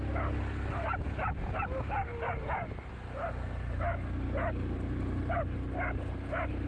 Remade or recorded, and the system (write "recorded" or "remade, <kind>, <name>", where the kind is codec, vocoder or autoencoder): recorded